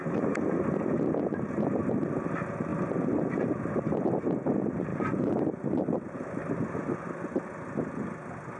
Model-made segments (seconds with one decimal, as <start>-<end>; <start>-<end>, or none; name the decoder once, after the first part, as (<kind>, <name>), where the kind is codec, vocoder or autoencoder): 4.9-6.4 (vocoder, BigVGAN v2)